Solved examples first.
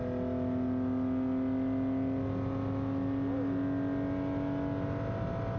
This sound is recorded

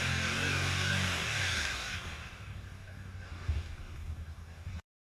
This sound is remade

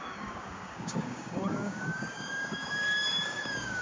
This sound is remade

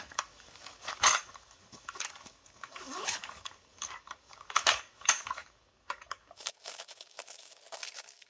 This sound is remade